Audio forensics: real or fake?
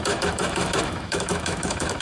fake